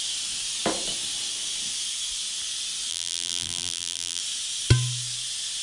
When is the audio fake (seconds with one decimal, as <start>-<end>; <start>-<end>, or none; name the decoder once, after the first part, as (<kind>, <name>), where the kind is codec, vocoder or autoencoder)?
2.9-4.2 (vocoder, BigVGAN v2)